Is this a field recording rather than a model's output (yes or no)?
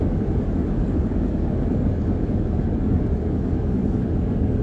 no